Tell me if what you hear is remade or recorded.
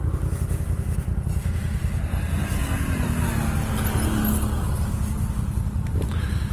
recorded